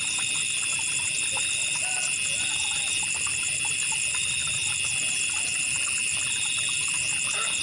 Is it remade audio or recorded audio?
recorded